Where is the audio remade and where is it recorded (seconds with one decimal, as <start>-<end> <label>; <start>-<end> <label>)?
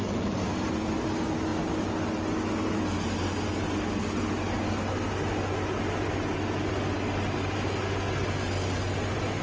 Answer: 0.0-9.4 recorded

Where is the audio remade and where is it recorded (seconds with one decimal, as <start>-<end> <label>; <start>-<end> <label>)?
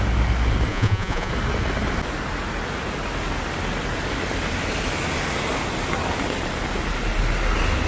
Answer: 0.0-0.7 recorded; 0.7-1.3 remade; 1.3-7.9 recorded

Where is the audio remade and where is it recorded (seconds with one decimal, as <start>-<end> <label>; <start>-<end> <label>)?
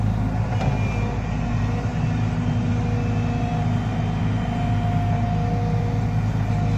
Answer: 0.0-6.8 recorded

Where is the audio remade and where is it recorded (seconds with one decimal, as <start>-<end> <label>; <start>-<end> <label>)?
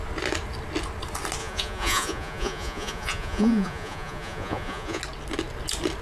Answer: 0.0-1.4 recorded; 1.4-5.0 remade; 5.0-6.0 recorded